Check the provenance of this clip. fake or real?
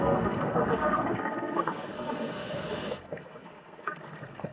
fake